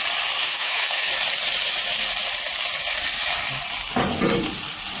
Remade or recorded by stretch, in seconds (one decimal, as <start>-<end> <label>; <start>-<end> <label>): 0.0-0.4 recorded; 0.4-1.1 remade; 1.1-5.0 recorded